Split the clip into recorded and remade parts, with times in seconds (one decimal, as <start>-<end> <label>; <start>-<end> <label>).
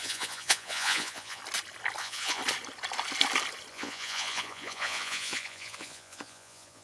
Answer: 0.0-1.4 remade; 1.4-2.0 recorded; 2.0-2.4 remade; 2.4-3.7 recorded; 3.7-6.8 remade